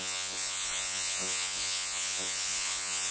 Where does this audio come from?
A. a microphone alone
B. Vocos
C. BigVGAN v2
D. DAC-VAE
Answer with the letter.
B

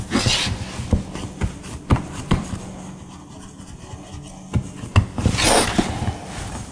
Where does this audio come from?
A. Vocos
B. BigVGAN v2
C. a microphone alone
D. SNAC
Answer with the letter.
C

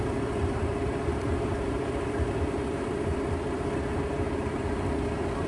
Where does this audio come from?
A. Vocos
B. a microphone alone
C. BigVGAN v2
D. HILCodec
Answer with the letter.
C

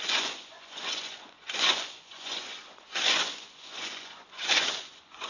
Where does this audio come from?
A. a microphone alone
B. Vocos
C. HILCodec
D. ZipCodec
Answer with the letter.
B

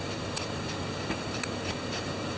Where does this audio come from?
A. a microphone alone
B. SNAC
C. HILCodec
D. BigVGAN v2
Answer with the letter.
D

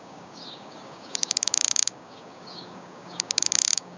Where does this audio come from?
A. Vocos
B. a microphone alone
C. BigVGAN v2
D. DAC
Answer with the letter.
D